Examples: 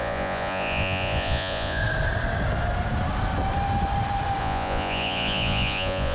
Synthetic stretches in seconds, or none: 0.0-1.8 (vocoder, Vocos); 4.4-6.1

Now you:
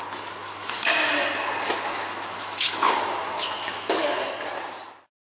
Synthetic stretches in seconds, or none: 0.4-1.1 (autoencoder, DAC-VAE); 1.9-4.5

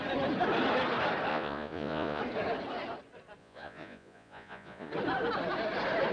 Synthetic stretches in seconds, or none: 1.3-2.2 (vocoder, Vocos); 3.4-4.9

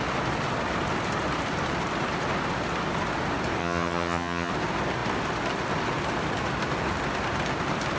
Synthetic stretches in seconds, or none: 3.6-4.5 (vocoder, HiFi-GAN)

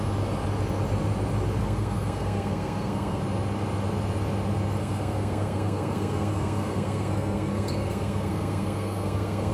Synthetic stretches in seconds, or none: 1.6-3.2 (codec, SNAC); 4.8-9.5

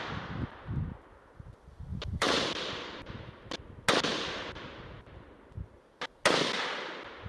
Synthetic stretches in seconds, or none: 1.9-3.3 (vocoder, BigVGAN v2)